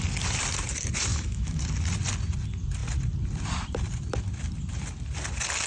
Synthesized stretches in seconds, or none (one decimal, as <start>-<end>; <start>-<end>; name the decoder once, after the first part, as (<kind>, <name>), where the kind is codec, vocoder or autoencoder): 1.1-1.6 (autoencoder, DAC-VAE)